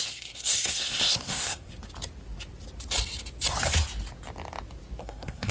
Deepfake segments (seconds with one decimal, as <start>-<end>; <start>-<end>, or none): 0.0-1.7; 5.0-5.5